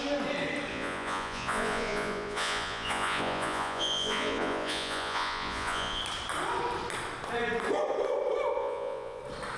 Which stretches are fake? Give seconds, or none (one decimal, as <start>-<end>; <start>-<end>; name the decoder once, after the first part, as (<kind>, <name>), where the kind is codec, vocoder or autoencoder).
0.7-6.0 (vocoder, Vocos); 8.6-9.2

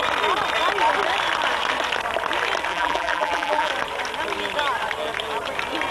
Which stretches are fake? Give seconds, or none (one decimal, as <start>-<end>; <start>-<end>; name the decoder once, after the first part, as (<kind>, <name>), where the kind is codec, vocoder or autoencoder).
2.7-3.7 (vocoder, BigVGAN v2)

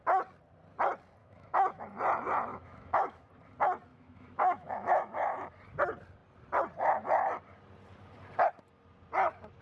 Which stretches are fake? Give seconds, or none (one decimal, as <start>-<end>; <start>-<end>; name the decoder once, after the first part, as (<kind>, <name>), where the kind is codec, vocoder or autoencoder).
1.2-1.8 (autoencoder, DAC-VAE); 2.5-3.3; 3.9-5.5

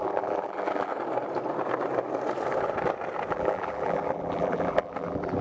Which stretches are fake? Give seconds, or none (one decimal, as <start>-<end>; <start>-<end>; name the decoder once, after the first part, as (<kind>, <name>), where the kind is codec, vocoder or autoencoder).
0.0-0.9 (vocoder, BigVGAN v2); 3.3-5.4

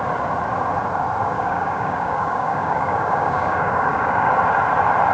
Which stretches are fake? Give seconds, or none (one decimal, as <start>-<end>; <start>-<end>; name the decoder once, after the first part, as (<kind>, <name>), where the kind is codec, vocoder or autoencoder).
1.2-4.3 (codec, DAC)

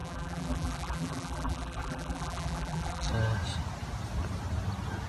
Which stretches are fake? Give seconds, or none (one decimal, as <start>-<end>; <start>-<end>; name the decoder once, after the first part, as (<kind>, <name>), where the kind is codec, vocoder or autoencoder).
0.0-3.1 (vocoder, BigVGAN v2)